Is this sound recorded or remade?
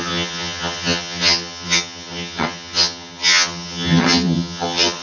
remade